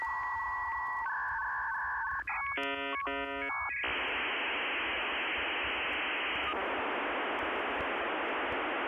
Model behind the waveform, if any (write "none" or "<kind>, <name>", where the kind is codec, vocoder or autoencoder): none